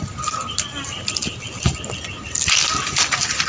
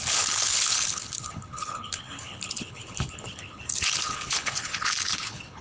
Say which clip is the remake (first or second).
second